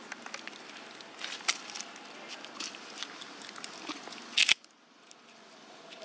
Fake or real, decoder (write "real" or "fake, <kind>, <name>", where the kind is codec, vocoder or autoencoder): real